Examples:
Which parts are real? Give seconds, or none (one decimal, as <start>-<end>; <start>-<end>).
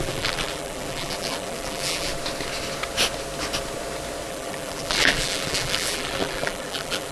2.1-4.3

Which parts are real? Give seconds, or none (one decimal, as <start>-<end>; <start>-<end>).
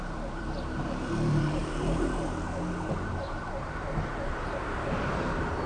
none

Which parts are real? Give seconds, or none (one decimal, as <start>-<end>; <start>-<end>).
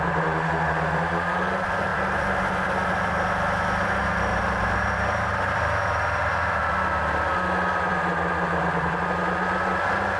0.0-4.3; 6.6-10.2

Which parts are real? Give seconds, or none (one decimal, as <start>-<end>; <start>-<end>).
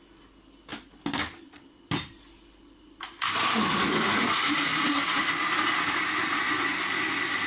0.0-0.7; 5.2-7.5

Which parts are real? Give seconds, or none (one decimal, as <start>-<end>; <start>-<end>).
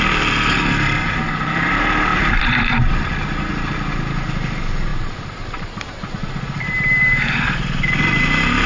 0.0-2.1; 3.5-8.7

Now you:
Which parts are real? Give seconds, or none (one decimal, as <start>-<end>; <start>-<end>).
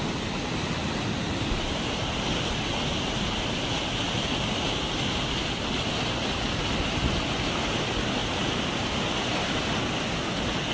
0.0-1.2; 4.8-8.2; 9.9-10.7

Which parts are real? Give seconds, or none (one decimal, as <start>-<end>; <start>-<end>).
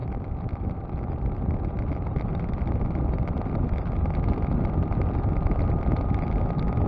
0.0-6.9